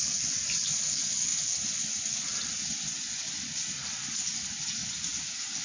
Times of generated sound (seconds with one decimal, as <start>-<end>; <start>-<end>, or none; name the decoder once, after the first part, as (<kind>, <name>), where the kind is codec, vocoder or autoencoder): none